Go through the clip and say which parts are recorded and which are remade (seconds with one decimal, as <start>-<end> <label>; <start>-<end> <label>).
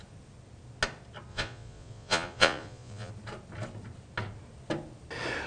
0.0-1.3 recorded; 1.3-3.1 remade; 3.1-5.5 recorded